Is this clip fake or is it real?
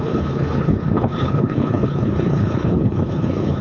fake